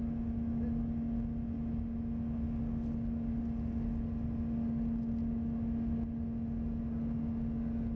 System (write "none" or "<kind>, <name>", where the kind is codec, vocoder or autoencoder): none